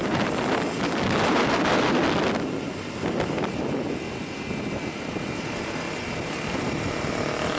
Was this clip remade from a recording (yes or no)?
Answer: no